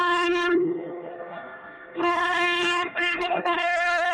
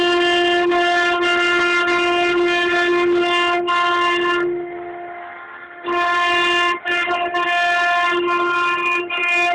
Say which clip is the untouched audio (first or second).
second